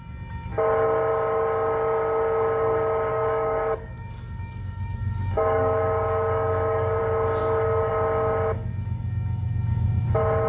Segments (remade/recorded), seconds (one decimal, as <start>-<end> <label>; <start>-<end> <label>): 0.0-3.1 recorded; 3.1-7.0 remade; 7.0-7.4 recorded; 7.4-7.9 remade; 7.9-10.5 recorded